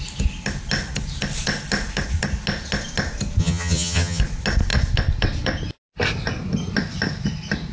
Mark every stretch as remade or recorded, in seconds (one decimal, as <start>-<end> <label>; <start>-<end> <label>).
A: 0.0-3.4 recorded; 3.4-4.2 remade; 4.2-7.7 recorded